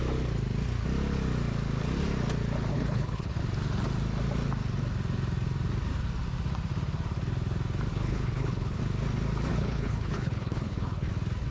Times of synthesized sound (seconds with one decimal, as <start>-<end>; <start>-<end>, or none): 2.7-3.4; 7.9-8.8; 9.5-11.1